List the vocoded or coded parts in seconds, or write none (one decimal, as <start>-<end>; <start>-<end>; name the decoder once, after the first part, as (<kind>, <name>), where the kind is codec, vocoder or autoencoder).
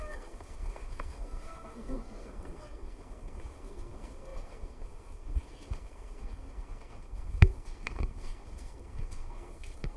0.0-10.0 (codec, SNAC)